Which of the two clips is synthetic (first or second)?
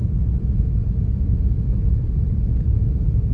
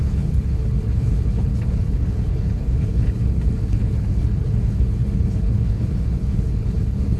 second